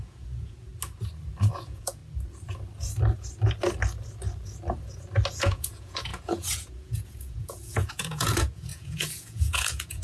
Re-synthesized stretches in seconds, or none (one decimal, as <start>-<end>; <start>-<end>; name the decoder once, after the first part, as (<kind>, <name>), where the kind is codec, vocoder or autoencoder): 0.0-0.7 (vocoder, Vocos); 1.5-2.0; 5.3-10.0